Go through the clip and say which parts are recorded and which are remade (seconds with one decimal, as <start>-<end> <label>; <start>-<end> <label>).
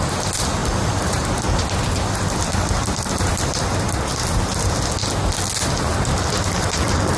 0.0-7.2 recorded